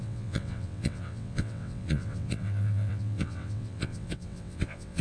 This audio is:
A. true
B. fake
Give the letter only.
B